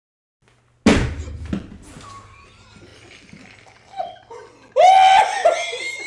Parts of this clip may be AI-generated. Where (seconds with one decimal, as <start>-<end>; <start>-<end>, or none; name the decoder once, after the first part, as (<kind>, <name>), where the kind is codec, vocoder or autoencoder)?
none